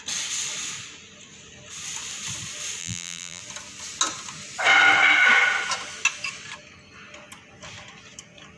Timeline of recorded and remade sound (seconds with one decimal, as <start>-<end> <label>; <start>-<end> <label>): 0.0-2.8 recorded; 2.8-3.4 remade; 3.4-8.6 recorded